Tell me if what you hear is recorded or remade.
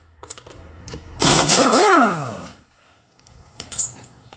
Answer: remade